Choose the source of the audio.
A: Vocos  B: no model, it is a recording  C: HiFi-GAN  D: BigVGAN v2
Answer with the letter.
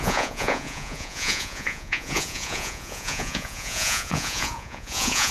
A